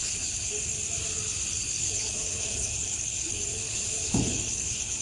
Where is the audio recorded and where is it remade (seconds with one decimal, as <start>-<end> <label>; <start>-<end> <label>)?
0.0-0.6 remade; 0.6-1.8 recorded; 1.8-5.0 remade